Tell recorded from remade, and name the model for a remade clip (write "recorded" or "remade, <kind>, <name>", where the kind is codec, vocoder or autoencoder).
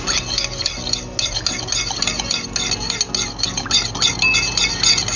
recorded